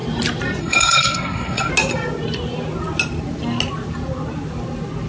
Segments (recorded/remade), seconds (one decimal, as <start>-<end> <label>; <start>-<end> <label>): 0.0-0.6 recorded; 0.6-1.7 remade; 1.7-5.1 recorded